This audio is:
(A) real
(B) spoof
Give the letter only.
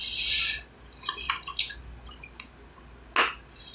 A